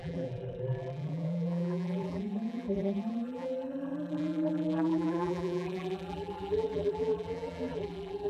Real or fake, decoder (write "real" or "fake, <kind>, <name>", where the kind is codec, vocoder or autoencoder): fake, vocoder, BigVGAN v2